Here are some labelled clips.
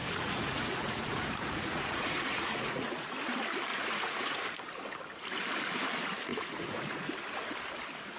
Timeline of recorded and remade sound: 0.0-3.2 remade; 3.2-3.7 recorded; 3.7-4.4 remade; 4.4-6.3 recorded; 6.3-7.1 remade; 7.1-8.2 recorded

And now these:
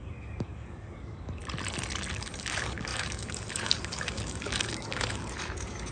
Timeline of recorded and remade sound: 0.0-1.4 remade; 1.4-2.1 recorded; 2.1-5.9 remade

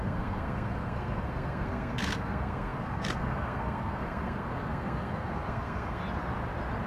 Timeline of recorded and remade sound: 0.0-6.0 remade; 6.0-6.9 recorded

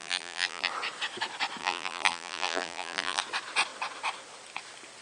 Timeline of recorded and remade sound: 0.0-0.7 remade; 0.7-1.6 recorded; 1.6-3.2 remade; 3.2-5.0 recorded

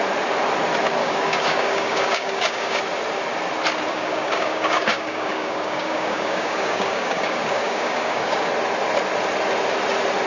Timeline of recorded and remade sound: 0.0-1.0 recorded; 1.0-2.8 remade; 2.8-3.9 recorded; 3.9-8.5 remade; 8.5-10.3 recorded

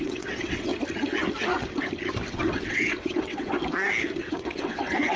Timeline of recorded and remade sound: 0.0-0.7 remade; 0.7-2.3 recorded; 2.3-3.6 remade; 3.6-4.2 recorded; 4.2-5.2 remade

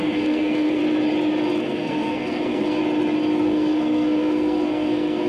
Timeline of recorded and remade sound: 0.0-0.8 remade; 0.8-1.6 recorded; 1.6-2.8 remade; 2.8-3.4 recorded; 3.4-5.3 remade